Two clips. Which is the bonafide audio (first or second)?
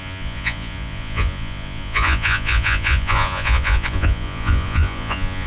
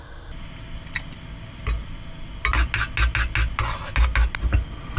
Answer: second